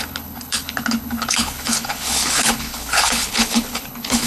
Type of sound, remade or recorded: remade